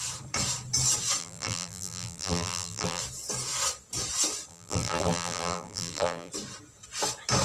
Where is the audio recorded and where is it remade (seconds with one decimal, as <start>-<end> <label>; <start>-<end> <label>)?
0.0-1.2 recorded; 1.2-3.0 remade; 3.0-4.5 recorded; 4.5-6.3 remade; 6.3-7.4 recorded